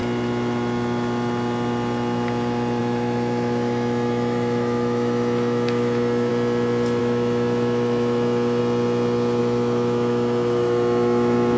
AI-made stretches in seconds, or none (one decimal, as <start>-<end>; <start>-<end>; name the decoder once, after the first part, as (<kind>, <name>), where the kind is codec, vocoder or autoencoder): 2.8-6.3 (autoencoder, DAC-VAE); 7.0-8.6; 9.4-11.6